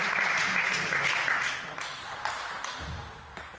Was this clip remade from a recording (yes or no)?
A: no